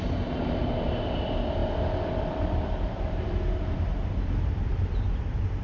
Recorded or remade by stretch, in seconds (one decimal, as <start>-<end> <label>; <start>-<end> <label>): 0.0-5.6 remade